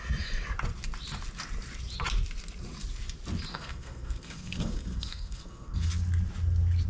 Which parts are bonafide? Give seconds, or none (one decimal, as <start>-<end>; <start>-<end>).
0.0-3.5; 5.9-6.9